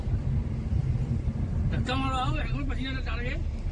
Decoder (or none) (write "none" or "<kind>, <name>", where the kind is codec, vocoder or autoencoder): none